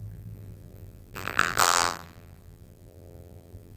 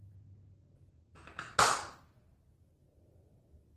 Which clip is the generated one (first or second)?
first